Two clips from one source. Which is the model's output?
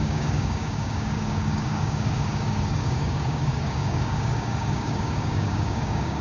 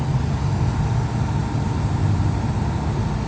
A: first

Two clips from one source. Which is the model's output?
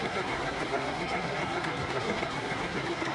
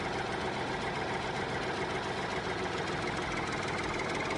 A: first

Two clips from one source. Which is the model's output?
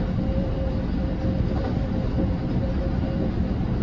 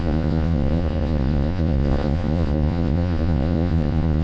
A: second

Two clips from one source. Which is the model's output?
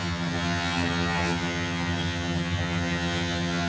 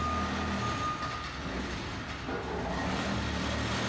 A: first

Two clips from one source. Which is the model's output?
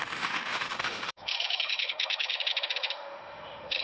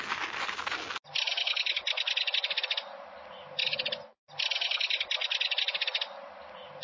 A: first